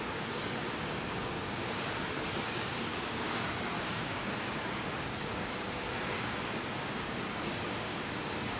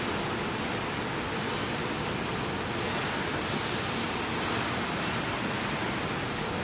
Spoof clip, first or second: first